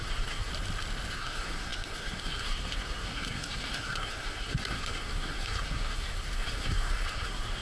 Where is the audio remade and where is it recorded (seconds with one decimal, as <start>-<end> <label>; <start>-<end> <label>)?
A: 0.0-0.5 remade; 0.5-1.1 recorded; 1.1-7.6 remade